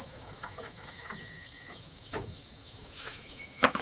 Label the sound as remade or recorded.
remade